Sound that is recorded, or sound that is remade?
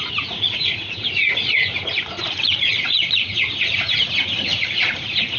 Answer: remade